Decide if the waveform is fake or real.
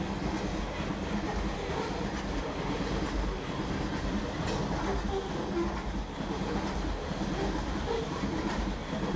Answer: real